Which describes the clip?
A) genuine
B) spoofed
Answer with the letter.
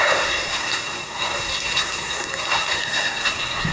B